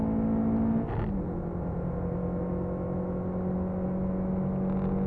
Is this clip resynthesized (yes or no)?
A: no